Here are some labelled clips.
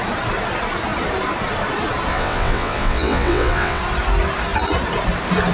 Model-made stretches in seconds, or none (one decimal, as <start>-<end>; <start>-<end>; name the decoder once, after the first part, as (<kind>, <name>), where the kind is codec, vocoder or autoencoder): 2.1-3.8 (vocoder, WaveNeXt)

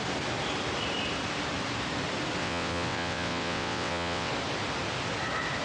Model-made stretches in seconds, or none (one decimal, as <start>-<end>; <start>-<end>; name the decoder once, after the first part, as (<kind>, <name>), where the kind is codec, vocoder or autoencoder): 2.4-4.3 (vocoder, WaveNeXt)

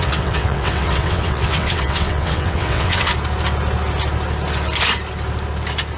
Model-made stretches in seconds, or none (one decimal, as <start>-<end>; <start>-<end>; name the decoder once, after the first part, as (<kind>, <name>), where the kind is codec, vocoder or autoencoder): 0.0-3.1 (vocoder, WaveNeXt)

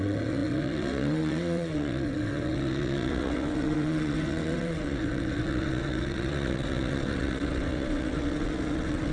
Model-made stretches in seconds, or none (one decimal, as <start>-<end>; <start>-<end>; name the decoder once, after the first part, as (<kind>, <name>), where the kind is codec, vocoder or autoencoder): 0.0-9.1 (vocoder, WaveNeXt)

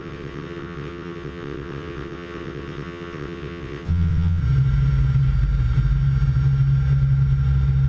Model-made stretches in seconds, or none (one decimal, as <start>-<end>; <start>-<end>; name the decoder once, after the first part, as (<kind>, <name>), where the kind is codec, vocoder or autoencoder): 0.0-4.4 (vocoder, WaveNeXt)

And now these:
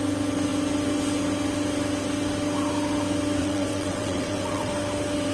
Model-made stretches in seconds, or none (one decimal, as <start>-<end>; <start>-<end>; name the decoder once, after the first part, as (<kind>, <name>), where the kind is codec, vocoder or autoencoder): 3.4-4.7 (vocoder, WaveNeXt)

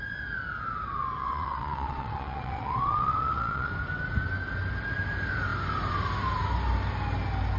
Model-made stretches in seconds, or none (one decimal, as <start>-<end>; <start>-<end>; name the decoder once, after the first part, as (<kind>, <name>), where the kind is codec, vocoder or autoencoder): 1.2-3.7 (vocoder, WaveNeXt)